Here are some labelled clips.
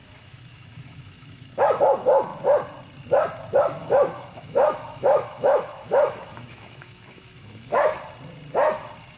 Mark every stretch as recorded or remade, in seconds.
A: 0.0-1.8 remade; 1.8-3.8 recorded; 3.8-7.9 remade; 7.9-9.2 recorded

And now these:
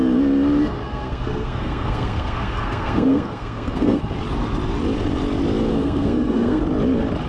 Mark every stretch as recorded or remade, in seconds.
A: 0.0-0.8 recorded; 0.8-4.0 remade; 4.0-5.7 recorded; 5.7-6.6 remade; 6.6-7.3 recorded

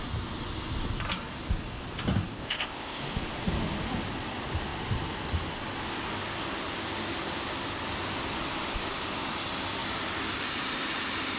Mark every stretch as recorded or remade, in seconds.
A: 0.0-2.3 recorded; 2.3-3.0 remade; 3.0-11.4 recorded